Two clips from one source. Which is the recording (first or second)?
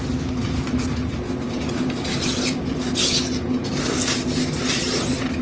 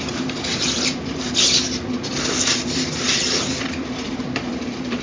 first